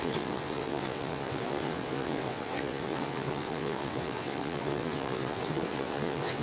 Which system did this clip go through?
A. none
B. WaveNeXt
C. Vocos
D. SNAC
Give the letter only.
B